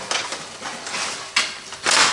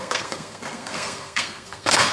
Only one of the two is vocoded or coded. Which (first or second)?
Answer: second